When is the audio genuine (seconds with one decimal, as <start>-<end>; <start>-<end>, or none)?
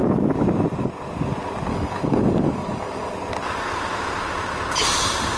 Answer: 0.0-1.7; 3.1-5.4